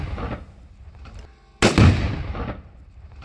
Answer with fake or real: real